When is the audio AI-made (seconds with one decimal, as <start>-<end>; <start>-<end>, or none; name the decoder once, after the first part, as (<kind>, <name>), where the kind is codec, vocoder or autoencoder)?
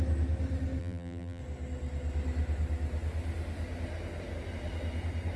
0.8-1.4 (vocoder, BigVGAN v2)